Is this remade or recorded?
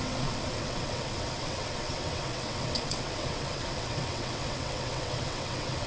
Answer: remade